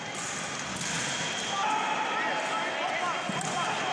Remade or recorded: recorded